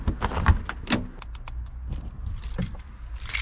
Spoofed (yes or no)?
no